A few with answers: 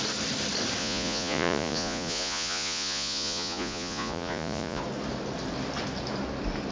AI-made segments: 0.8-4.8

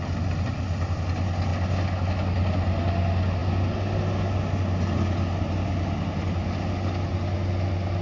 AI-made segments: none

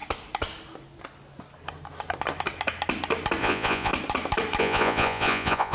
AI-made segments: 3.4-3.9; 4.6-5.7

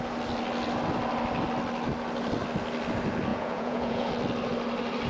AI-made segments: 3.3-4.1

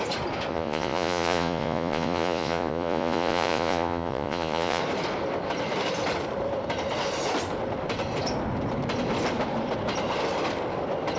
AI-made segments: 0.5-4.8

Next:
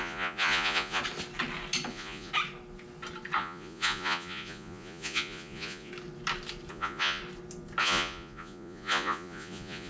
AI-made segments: 0.0-1.0; 1.9-2.3; 3.4-5.9; 6.7-7.2; 7.8-9.9

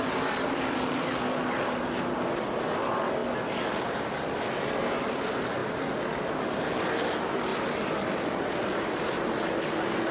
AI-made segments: none

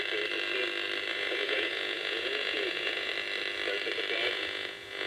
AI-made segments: 1.1-3.1; 4.2-5.1